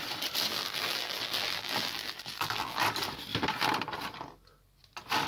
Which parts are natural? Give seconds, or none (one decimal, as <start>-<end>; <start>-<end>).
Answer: 0.0-0.5; 2.8-5.3